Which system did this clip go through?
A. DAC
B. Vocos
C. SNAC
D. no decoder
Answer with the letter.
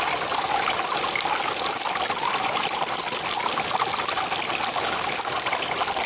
D